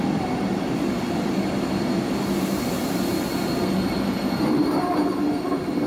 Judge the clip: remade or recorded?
remade